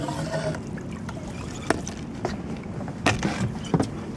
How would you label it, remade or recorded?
recorded